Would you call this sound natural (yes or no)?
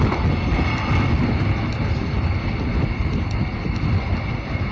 yes